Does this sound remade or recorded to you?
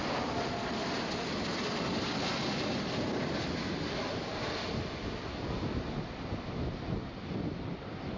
recorded